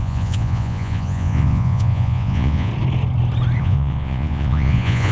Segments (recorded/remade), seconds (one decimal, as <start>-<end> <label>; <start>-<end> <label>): 0.0-2.7 remade; 2.7-3.6 recorded; 3.6-5.1 remade